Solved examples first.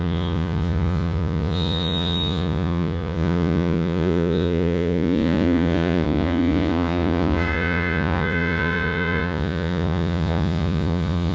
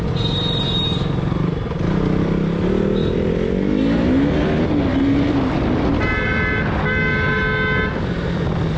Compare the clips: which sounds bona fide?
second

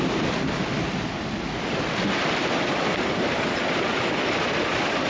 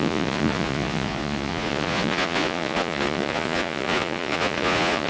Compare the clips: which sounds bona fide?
first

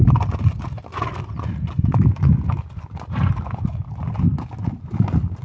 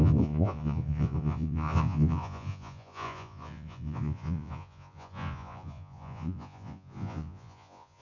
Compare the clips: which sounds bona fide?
first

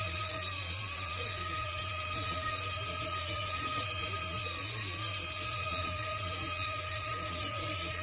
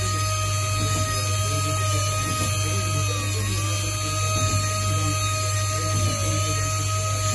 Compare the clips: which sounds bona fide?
second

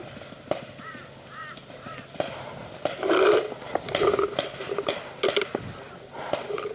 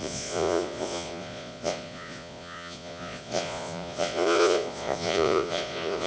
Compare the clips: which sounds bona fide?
first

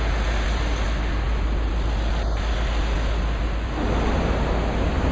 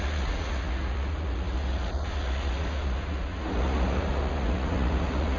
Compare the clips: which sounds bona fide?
first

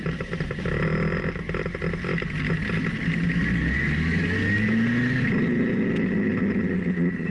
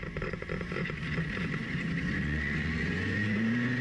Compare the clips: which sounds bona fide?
first